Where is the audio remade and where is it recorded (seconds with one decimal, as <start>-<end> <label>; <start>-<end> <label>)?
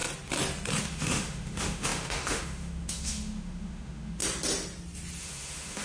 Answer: 0.0-0.8 recorded; 0.8-4.2 remade; 4.2-5.2 recorded; 5.2-5.8 remade